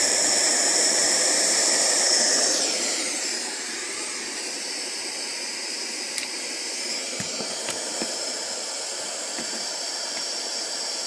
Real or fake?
fake